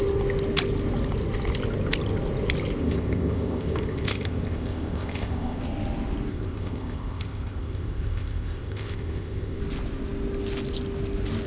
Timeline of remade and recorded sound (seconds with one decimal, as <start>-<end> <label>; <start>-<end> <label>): 0.0-2.8 recorded; 2.8-5.6 remade; 5.6-6.3 recorded; 6.3-9.6 remade; 9.6-11.5 recorded